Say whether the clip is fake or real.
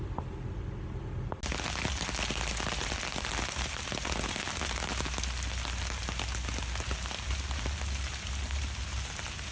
real